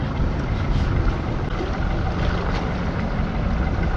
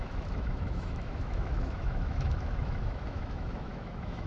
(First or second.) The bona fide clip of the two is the first